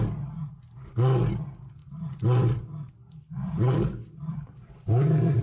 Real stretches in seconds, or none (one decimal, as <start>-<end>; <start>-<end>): 0.0-1.8; 4.7-5.4